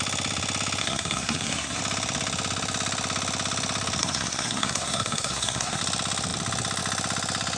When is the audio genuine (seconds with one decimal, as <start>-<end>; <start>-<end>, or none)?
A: 0.0-0.8; 1.8-4.0; 5.8-7.6